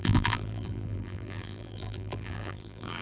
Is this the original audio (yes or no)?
no